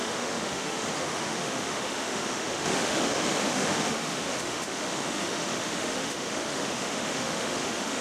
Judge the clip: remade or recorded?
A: remade